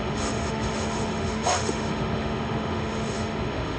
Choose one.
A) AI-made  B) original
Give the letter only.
A